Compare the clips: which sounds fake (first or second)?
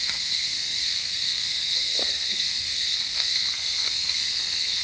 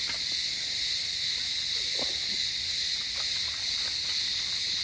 first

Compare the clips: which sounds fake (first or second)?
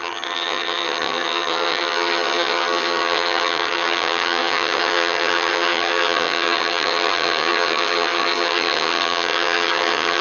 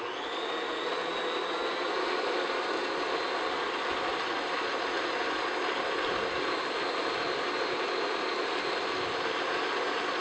first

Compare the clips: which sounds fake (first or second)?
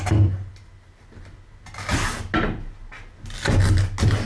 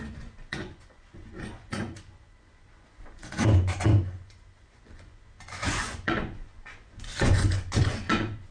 second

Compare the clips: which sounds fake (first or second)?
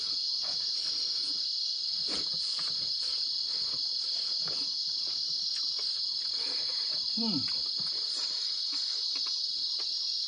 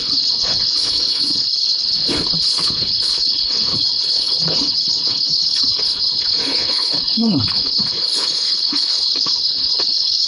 second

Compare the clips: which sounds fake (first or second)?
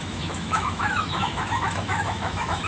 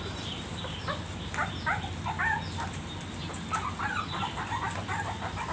first